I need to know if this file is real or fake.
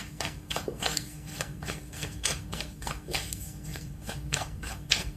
fake